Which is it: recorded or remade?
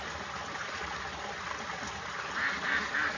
recorded